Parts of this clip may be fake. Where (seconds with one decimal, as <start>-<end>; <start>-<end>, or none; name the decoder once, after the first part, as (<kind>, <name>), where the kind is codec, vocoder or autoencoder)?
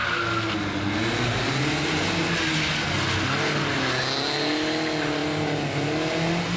none